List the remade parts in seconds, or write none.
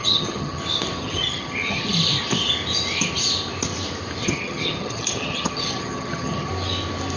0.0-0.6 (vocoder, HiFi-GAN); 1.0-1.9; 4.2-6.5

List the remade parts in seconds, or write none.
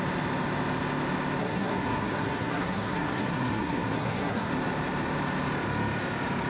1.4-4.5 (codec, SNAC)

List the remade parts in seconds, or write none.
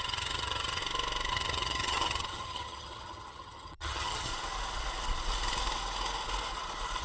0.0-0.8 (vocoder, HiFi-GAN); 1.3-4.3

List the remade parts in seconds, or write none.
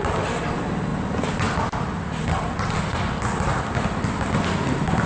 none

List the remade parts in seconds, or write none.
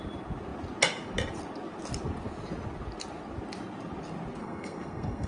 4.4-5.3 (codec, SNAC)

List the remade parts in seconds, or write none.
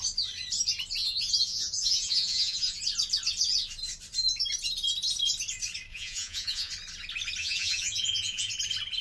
1.0-2.8 (vocoder, Vocos); 5.9-6.7; 7.4-8.5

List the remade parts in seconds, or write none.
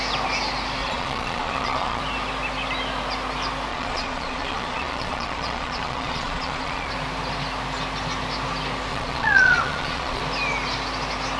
0.8-2.0 (vocoder, Vocos); 3.7-6.9; 8.9-10.2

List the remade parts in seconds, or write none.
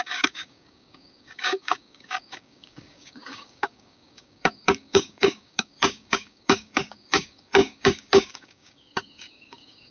0.0-9.9 (codec, DAC)